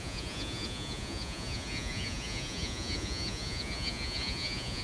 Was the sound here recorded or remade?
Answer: remade